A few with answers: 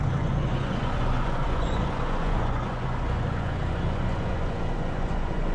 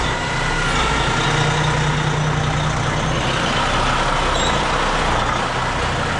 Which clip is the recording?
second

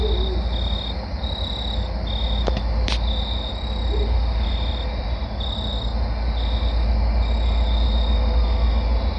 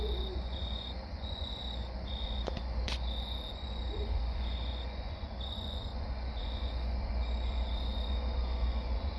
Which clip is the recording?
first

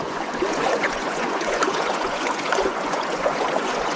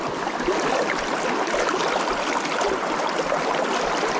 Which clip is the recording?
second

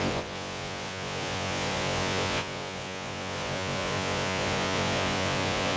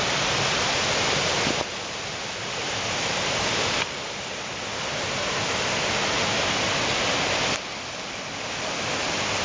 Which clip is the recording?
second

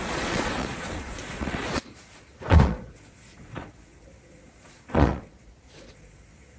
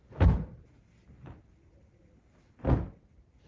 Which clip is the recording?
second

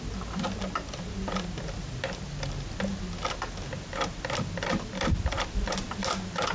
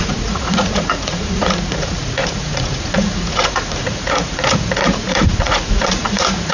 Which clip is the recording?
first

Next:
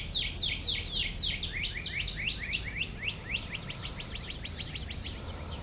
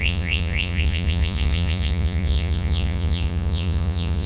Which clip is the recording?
first